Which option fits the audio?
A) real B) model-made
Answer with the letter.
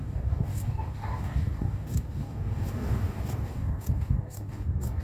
B